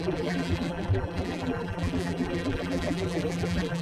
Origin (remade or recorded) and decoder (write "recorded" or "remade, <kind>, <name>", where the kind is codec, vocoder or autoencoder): remade, vocoder, BigVGAN v2